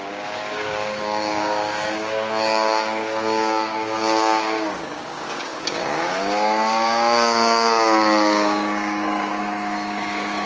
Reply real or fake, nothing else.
fake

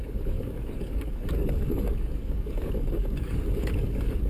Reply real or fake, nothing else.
fake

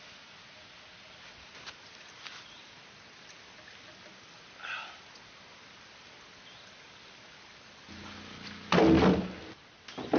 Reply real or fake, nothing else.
real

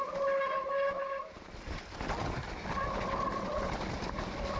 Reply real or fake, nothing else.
real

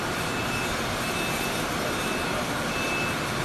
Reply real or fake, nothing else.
real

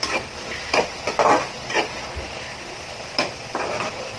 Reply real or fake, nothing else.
real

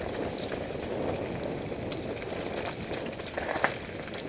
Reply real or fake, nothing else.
real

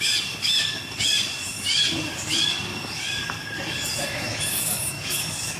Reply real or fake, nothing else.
fake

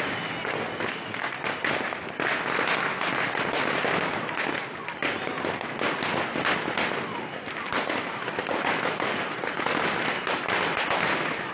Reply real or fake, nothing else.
real